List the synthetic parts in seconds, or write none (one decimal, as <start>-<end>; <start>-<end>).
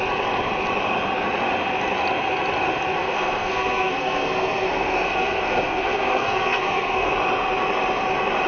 3.0-7.1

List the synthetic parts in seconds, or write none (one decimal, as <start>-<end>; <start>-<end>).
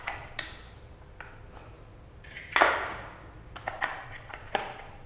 0.0-0.6; 3.7-5.1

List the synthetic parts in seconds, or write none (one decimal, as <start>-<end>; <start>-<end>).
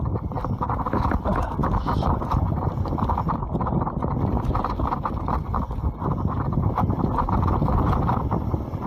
none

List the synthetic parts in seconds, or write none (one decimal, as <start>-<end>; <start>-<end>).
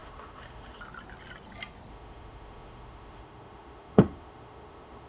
0.0-0.8; 1.9-5.1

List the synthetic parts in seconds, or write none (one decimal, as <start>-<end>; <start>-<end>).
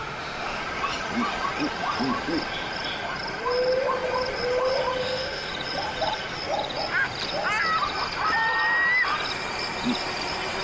0.0-0.6; 5.0-5.5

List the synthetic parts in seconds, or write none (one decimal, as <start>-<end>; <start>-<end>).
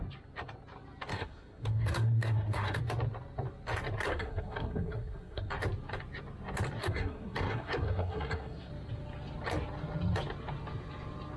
1.1-2.8; 4.1-5.5; 6.8-8.7